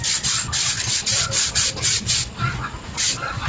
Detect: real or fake real